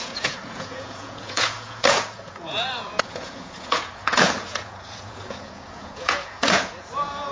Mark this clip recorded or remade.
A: remade